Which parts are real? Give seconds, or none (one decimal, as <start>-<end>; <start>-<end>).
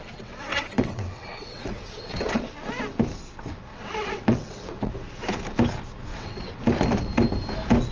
2.4-3.7; 4.9-6.1; 6.6-7.9